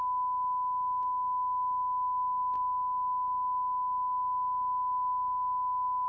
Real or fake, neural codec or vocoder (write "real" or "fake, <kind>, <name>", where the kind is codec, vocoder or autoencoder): fake, codec, DAC